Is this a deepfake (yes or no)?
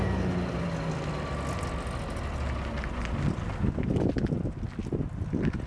no